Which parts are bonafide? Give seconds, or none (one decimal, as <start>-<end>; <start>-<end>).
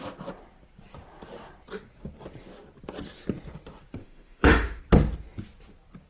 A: 0.0-4.0; 4.8-6.1